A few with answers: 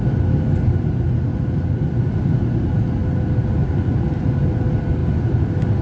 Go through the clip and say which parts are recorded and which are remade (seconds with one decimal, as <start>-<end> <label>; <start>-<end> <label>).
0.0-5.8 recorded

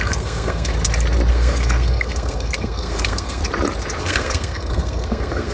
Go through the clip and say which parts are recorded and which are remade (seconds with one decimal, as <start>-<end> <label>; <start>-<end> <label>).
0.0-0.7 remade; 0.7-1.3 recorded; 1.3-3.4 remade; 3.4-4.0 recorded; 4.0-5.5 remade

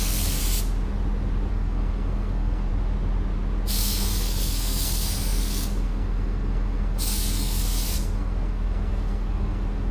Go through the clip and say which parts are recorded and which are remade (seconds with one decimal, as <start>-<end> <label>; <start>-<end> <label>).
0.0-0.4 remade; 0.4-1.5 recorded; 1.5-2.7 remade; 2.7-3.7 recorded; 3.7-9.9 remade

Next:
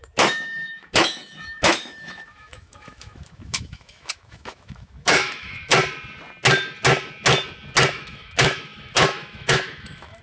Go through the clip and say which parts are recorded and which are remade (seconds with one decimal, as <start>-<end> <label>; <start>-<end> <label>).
0.0-5.7 remade; 5.7-7.9 recorded; 7.9-10.2 remade